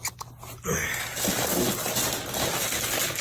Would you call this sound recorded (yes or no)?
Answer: yes